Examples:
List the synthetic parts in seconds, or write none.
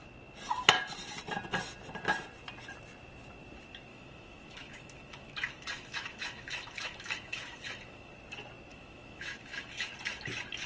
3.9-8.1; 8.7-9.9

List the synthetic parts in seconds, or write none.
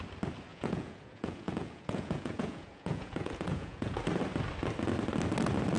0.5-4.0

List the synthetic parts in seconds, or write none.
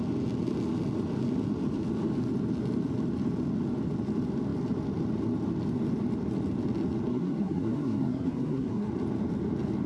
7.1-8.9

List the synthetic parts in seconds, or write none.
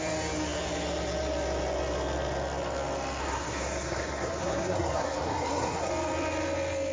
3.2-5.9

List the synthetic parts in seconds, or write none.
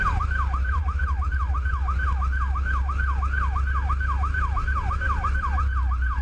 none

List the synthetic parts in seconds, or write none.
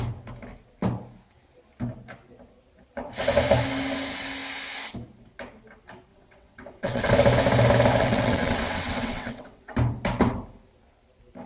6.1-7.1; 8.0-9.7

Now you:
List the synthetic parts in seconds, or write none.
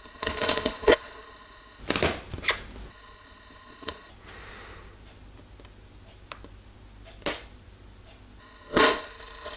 0.0-1.8; 2.9-4.1; 8.4-9.6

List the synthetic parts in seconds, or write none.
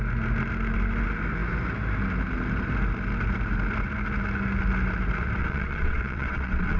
5.4-6.8